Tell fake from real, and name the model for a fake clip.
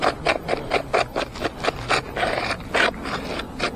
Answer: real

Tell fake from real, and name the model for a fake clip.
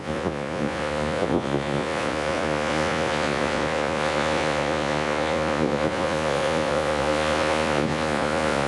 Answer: fake, vocoder, Vocos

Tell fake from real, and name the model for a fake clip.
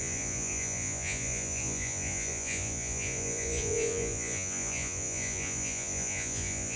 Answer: fake, vocoder, Vocos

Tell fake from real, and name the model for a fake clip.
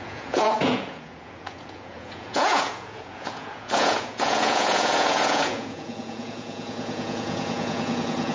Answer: fake, vocoder, Vocos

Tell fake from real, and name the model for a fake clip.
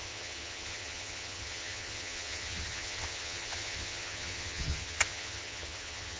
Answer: fake, vocoder, HiFi-GAN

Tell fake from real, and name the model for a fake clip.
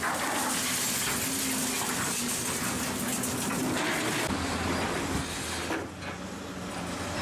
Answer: real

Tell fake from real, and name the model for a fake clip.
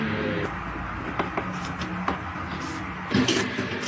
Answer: real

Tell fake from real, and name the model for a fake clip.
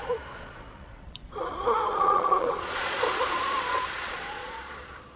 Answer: fake, vocoder, Vocos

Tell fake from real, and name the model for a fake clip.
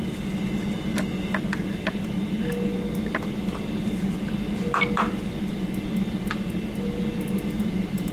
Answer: real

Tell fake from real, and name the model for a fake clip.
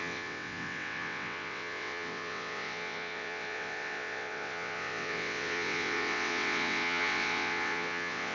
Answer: fake, vocoder, WaveNeXt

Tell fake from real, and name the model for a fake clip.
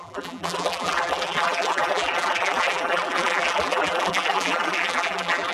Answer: fake, vocoder, BigVGAN v2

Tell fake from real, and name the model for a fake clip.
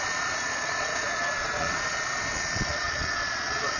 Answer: fake, vocoder, Vocos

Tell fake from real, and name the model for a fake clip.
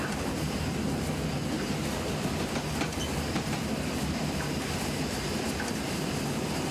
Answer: real